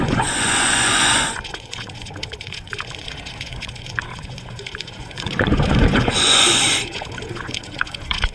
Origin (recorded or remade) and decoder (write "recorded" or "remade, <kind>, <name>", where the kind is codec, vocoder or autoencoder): remade, vocoder, Vocos